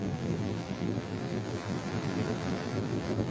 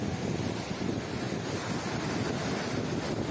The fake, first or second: first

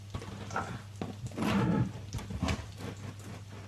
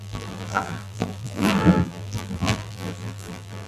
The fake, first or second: second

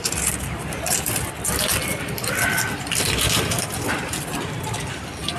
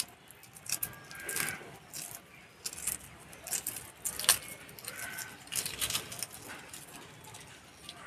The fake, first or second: first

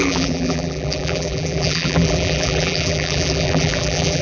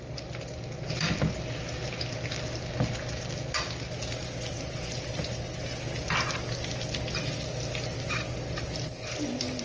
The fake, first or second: first